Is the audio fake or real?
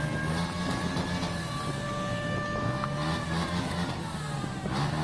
real